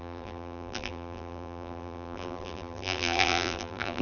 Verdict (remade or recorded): remade